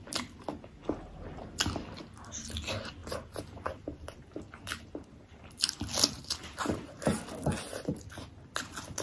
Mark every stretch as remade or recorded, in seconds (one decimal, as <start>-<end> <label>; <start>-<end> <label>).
0.0-9.0 recorded